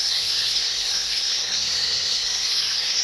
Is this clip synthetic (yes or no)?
yes